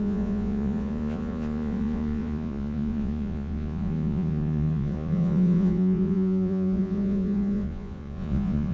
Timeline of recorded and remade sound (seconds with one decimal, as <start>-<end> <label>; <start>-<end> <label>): 0.0-8.7 remade